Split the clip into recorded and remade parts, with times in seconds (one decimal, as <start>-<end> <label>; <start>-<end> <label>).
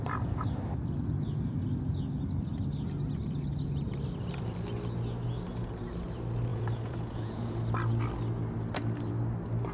0.0-6.5 recorded; 6.5-7.6 remade; 7.6-9.7 recorded